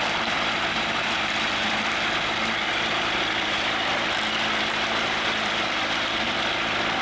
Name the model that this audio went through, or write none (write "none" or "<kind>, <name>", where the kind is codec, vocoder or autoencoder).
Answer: vocoder, BigVGAN v2